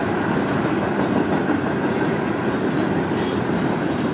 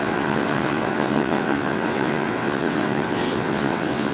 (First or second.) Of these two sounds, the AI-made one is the second